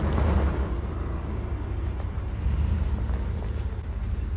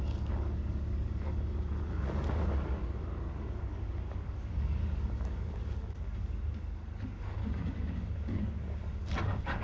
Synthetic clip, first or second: second